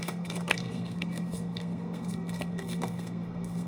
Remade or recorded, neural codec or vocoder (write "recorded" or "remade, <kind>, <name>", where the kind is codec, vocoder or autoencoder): remade, codec, SNAC